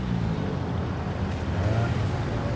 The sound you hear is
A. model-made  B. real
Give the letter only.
B